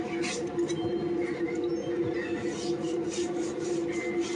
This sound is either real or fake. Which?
real